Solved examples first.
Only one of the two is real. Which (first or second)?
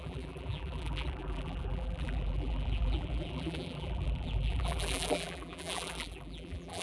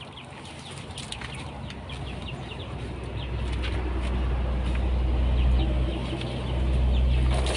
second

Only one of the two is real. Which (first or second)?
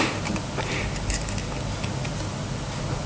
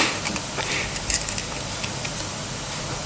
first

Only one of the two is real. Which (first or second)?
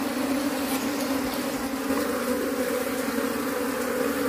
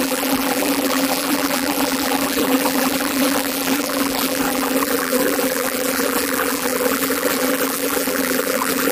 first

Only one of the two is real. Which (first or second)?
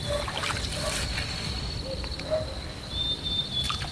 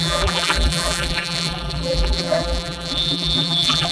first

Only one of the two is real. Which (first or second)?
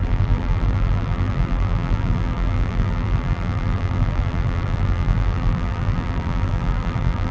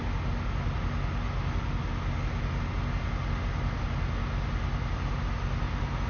second